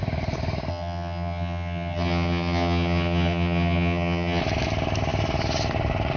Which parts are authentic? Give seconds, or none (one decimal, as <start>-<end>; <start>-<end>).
0.0-0.7; 4.4-6.2